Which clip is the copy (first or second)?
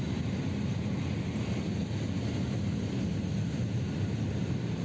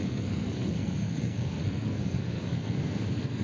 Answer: second